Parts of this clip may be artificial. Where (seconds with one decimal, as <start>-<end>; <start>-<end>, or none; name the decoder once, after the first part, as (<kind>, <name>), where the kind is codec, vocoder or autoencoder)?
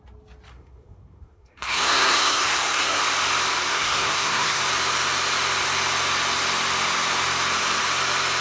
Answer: 0.5-3.0 (codec, SNAC); 3.7-4.6